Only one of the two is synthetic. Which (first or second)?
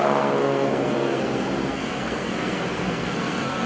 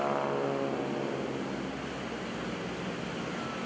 first